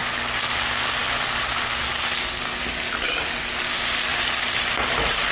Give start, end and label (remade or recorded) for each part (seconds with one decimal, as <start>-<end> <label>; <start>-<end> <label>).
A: 0.0-1.0 recorded; 1.0-1.5 remade; 1.5-4.1 recorded; 4.1-5.3 remade

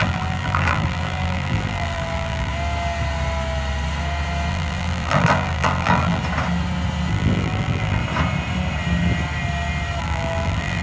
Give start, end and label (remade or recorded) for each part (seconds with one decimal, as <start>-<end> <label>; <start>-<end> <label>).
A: 0.0-2.5 remade; 2.5-4.5 recorded; 4.5-6.2 remade; 6.2-7.1 recorded; 7.1-8.0 remade; 8.0-10.0 recorded; 10.0-10.8 remade